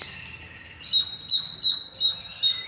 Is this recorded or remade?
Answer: recorded